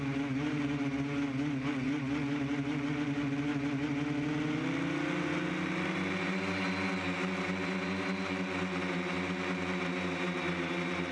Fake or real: real